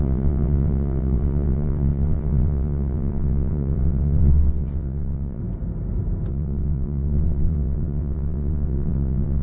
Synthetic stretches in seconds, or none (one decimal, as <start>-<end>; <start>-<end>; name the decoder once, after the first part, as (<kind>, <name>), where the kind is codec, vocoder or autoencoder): 0.0-5.4 (vocoder, WaveNeXt); 6.3-9.4